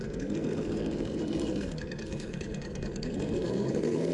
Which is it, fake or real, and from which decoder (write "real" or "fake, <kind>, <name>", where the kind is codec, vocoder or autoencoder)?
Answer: fake, codec, SNAC